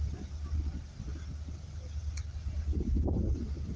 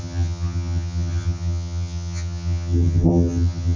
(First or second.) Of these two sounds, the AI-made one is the second